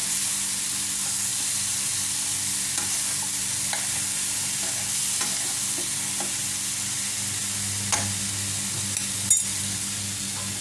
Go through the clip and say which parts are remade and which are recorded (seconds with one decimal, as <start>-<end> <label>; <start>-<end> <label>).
0.0-10.6 recorded